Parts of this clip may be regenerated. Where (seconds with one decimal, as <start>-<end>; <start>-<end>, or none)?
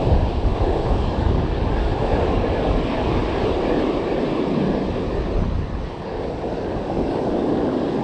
0.0-3.2; 5.9-8.0